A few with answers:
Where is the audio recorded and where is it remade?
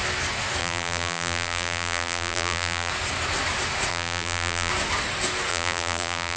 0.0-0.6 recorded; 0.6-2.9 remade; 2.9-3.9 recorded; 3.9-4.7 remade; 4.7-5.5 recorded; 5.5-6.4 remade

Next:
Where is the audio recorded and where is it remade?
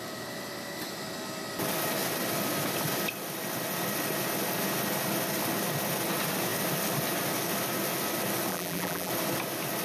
0.0-8.5 recorded; 8.5-9.1 remade; 9.1-9.8 recorded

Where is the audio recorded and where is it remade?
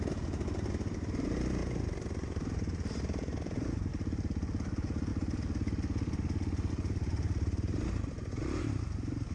0.0-5.1 remade; 5.1-6.7 recorded; 6.7-9.3 remade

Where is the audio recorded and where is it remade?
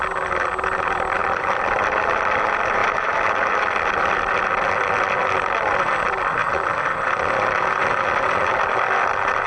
0.0-1.2 recorded; 1.2-2.1 remade; 2.1-2.8 recorded; 2.8-3.6 remade; 3.6-6.4 recorded; 6.4-7.7 remade; 7.7-9.5 recorded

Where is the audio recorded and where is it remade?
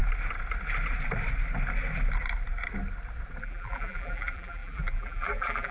0.0-3.4 recorded; 3.4-5.7 remade